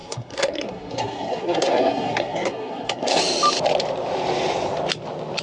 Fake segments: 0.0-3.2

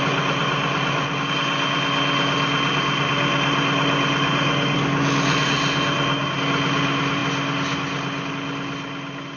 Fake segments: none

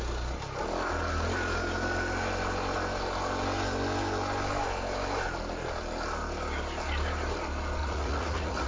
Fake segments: 7.8-8.7

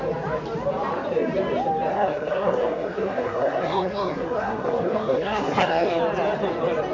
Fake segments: 1.9-6.0

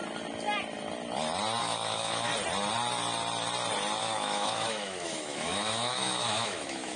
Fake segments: 1.6-2.3; 4.0-7.0

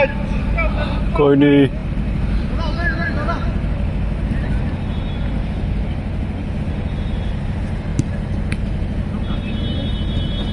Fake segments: none

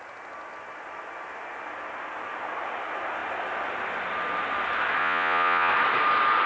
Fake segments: 5.0-5.7